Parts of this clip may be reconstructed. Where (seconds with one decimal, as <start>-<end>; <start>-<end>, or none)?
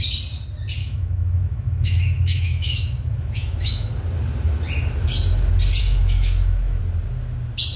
0.8-3.9; 5.8-6.8